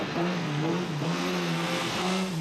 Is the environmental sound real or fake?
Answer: fake